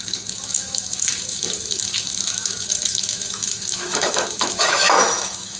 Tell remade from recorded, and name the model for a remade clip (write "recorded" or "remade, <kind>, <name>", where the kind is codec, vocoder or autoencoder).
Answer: remade, autoencoder, DAC-VAE